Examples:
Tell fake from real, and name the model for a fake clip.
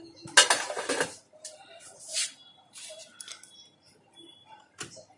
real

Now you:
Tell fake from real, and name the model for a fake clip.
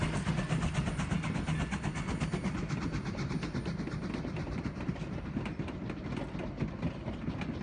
real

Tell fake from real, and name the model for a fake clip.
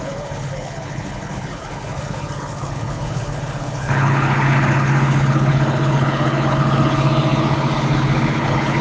fake, codec, HILCodec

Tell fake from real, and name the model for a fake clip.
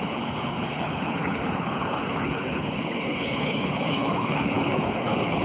fake, codec, HILCodec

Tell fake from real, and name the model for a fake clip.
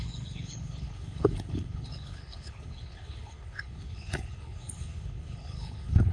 fake, codec, HILCodec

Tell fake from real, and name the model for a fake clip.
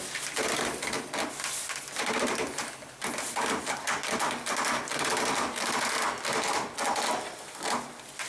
real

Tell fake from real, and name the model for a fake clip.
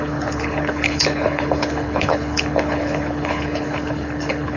fake, codec, HILCodec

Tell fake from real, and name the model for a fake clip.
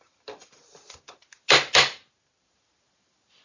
real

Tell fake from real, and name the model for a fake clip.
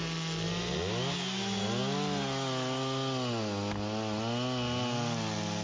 real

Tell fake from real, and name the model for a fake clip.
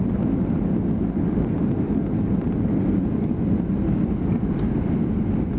real